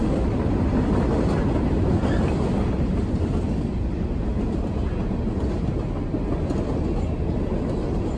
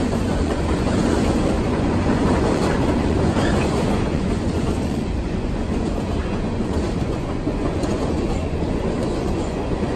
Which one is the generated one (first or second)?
second